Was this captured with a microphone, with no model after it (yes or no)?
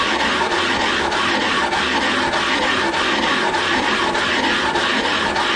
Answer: yes